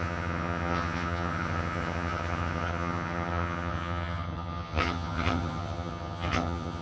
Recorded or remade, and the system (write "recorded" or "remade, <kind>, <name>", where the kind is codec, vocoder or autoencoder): remade, vocoder, HiFi-GAN